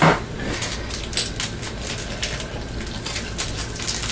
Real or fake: real